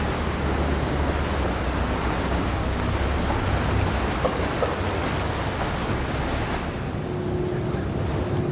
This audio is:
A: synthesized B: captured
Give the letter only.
B